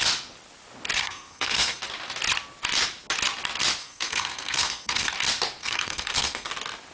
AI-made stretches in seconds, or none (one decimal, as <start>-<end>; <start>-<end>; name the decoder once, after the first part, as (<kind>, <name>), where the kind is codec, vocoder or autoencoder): 1.0-1.8 (codec, SNAC); 3.8-5.1; 5.6-6.5